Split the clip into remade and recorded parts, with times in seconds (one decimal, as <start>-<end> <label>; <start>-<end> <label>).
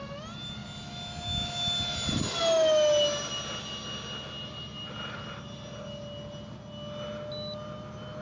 0.0-8.2 recorded